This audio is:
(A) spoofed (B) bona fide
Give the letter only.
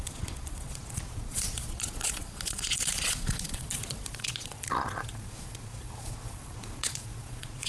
A